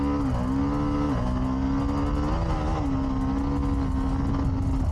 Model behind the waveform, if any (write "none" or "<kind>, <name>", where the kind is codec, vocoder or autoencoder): none